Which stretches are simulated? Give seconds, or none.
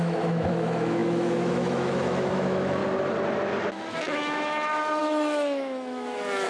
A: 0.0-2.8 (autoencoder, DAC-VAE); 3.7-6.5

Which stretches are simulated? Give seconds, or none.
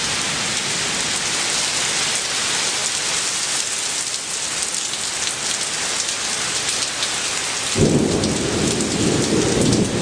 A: none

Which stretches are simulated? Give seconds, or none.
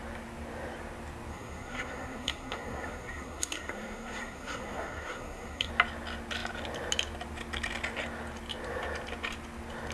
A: 1.3-5.7 (codec, SNAC)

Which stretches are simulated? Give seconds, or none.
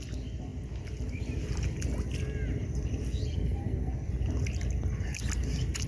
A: 3.3-4.1 (codec, SNAC)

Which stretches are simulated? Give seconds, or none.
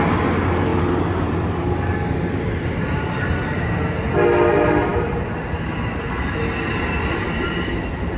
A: none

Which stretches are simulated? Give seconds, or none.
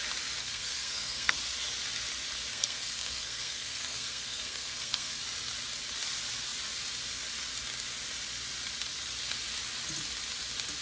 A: 0.4-1.4 (codec, SNAC); 2.5-5.2